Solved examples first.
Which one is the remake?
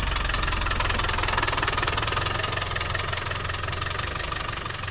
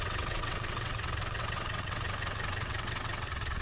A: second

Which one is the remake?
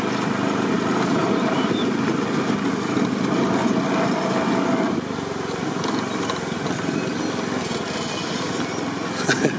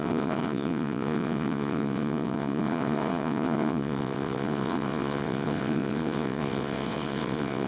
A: second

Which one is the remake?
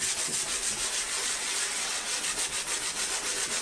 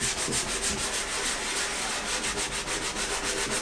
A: first